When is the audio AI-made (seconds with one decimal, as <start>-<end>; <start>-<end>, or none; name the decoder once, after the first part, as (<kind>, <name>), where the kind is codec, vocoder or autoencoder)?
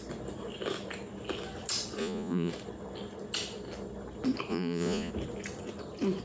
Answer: 2.0-2.5 (vocoder, Vocos); 4.5-5.1